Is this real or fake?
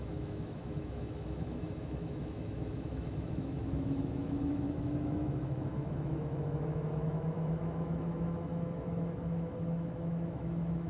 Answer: fake